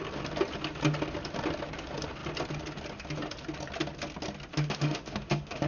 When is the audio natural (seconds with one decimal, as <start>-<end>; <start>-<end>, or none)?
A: 0.0-4.5